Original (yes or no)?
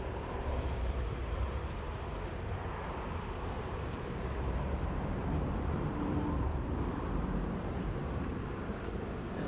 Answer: no